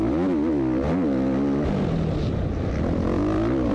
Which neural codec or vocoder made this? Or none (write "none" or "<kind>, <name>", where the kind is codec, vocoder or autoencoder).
none